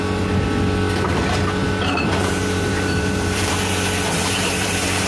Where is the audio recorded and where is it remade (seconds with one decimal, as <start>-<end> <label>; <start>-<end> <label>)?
0.0-1.6 recorded; 1.6-5.1 remade